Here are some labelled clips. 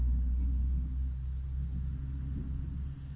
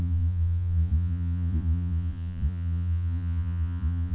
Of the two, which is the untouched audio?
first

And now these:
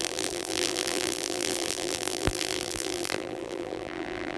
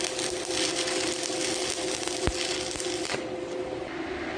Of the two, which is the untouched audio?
second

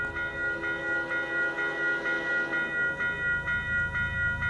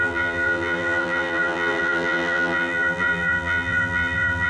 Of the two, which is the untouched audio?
first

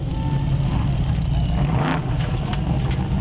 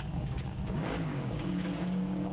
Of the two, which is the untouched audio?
first